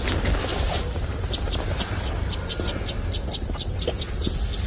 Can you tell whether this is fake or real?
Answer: real